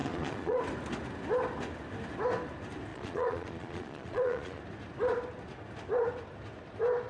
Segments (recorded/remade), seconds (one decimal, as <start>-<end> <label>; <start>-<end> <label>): 0.0-0.6 remade; 0.6-2.9 recorded; 2.9-4.6 remade; 4.6-7.1 recorded